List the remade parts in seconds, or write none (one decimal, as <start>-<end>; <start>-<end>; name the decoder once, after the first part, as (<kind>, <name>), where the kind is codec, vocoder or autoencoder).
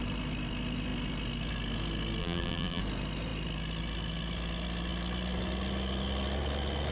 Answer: 2.2-2.8 (vocoder, BigVGAN v2)